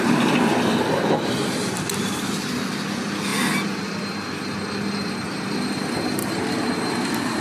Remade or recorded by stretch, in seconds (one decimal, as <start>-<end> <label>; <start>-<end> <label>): 0.0-6.2 recorded; 6.2-6.8 remade; 6.8-7.4 recorded